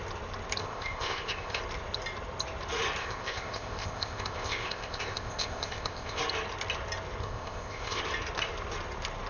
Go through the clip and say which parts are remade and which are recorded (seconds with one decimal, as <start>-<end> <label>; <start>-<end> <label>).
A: 0.0-0.6 recorded; 0.6-1.6 remade; 1.6-3.0 recorded; 3.0-6.2 remade; 6.2-7.2 recorded; 7.2-8.0 remade; 8.0-9.3 recorded